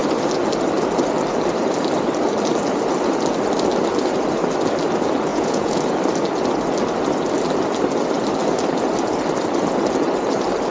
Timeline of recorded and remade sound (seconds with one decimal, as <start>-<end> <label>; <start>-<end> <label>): 0.0-5.3 recorded; 5.3-5.8 remade; 5.8-10.7 recorded